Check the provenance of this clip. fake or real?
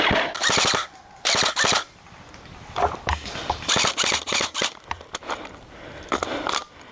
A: fake